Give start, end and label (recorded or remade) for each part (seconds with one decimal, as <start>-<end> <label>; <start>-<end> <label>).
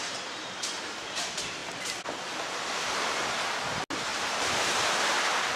0.0-0.7 remade; 0.7-4.1 recorded; 4.1-4.8 remade; 4.8-5.6 recorded